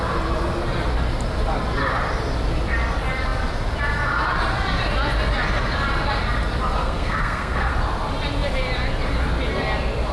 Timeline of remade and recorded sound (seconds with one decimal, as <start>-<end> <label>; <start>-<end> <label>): 0.0-6.8 recorded; 6.8-7.7 remade; 7.7-10.1 recorded